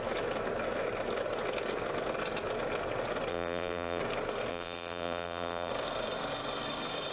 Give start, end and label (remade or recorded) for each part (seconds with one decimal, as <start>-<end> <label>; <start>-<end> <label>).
0.0-3.3 recorded; 3.3-4.0 remade; 4.0-4.5 recorded; 4.5-5.7 remade; 5.7-7.1 recorded